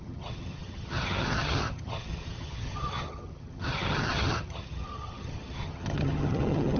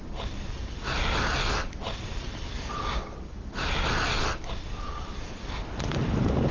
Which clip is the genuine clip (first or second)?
second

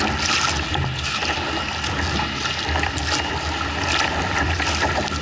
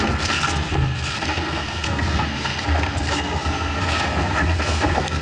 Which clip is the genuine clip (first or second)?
first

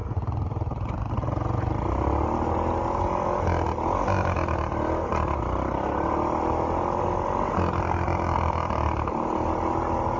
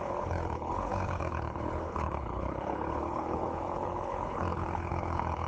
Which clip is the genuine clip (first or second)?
first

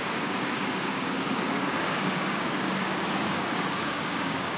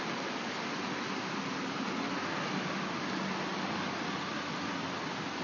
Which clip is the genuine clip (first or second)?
second